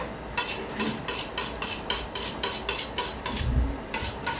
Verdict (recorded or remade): recorded